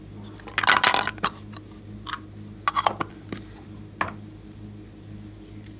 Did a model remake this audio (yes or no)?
no